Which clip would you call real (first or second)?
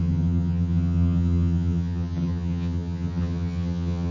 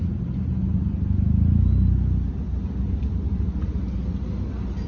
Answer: second